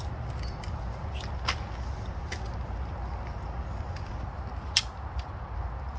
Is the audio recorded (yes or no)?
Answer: yes